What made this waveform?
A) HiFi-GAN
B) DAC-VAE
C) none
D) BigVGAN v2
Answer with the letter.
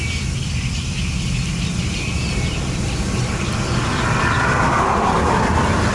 C